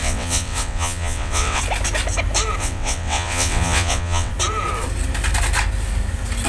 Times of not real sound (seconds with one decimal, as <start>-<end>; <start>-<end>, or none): 0.0-1.6; 2.6-4.3